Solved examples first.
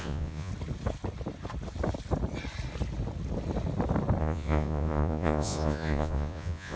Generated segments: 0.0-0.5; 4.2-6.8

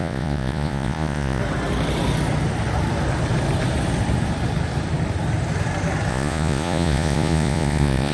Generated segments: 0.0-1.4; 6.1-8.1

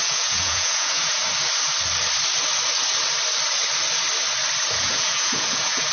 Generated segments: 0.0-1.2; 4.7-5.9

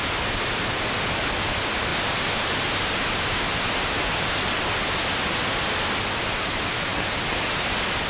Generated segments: none

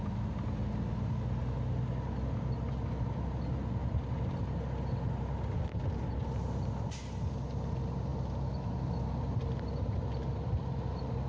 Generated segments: none